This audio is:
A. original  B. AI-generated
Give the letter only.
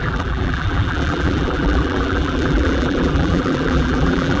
B